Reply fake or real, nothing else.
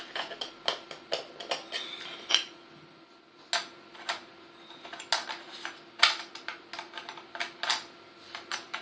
real